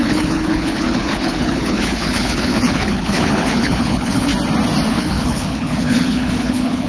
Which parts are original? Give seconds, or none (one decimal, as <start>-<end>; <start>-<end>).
4.3-4.9